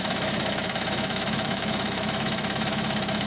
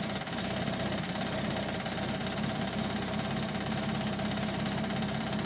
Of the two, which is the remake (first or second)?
first